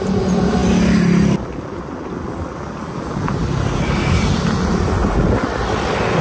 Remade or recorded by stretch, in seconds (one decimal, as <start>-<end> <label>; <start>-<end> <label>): 0.0-6.2 recorded